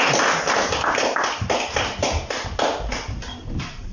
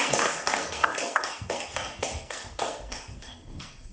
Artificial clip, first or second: second